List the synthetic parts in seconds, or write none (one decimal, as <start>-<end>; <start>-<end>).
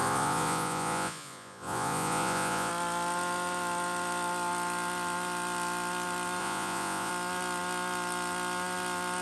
0.0-2.7; 6.4-7.1